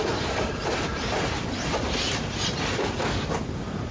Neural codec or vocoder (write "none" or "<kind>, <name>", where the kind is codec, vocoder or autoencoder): none